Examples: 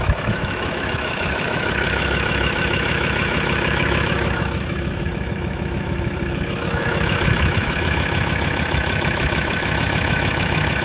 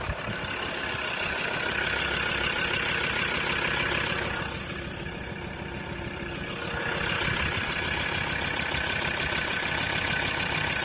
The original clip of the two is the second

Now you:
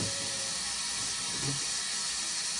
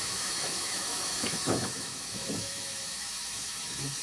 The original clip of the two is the first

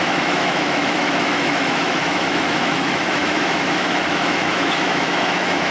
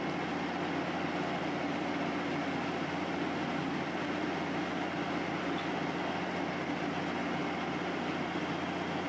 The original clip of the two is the second